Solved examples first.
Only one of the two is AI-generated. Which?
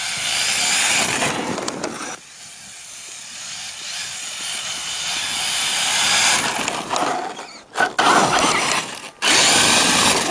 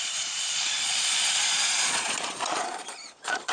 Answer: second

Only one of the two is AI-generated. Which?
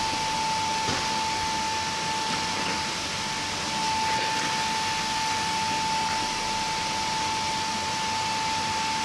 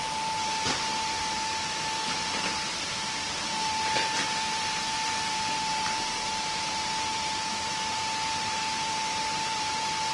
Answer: second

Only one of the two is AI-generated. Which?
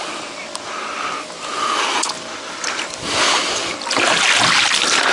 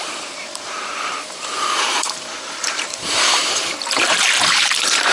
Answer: second